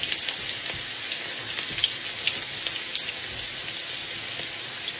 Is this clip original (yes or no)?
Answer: yes